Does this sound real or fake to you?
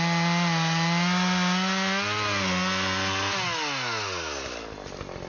real